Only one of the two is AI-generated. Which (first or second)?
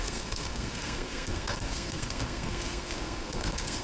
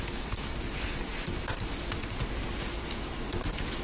first